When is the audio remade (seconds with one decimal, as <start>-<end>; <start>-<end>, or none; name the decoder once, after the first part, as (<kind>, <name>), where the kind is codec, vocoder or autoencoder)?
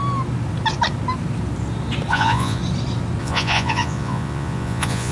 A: 2.1-2.6 (vocoder, Vocos); 3.2-5.1